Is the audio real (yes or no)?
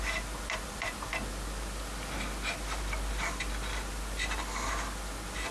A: yes